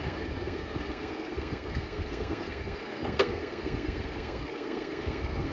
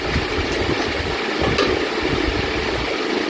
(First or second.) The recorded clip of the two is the second